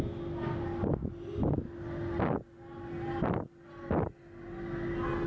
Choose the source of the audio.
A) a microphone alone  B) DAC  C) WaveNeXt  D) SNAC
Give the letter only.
A